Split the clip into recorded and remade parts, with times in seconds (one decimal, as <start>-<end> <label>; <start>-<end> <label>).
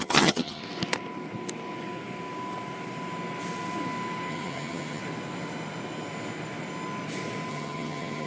0.0-0.6 remade; 0.6-4.3 recorded; 4.3-5.0 remade; 5.0-7.5 recorded; 7.5-8.3 remade